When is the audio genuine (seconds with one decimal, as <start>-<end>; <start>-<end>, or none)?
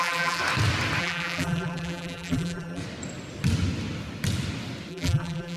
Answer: 0.4-1.0; 2.8-4.9